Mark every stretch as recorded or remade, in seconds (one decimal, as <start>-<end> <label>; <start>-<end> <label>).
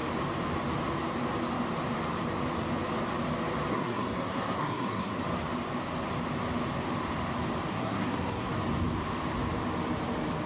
0.0-3.7 recorded; 3.7-5.2 remade; 5.2-7.7 recorded; 7.7-8.5 remade; 8.5-10.5 recorded